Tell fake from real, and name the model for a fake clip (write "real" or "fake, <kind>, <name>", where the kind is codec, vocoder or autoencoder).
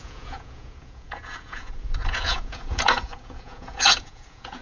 fake, vocoder, Vocos